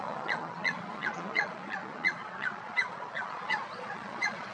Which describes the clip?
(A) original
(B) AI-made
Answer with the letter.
B